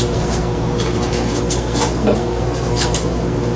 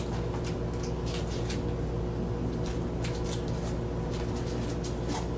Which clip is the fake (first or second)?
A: first